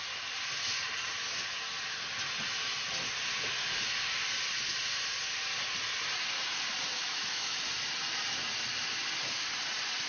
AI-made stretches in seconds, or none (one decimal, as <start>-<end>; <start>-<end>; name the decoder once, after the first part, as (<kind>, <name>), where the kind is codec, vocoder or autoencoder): 7.0-7.6 (autoencoder, DAC-VAE)